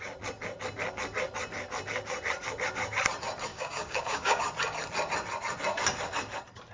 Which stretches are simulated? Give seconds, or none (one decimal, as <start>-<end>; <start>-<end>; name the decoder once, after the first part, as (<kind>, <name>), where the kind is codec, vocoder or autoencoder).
3.5-4.4 (codec, DAC)